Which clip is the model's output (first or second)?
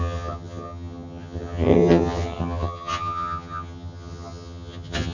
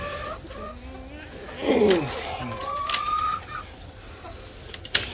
first